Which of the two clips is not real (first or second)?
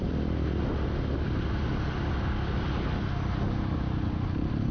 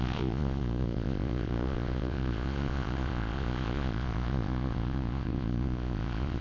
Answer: second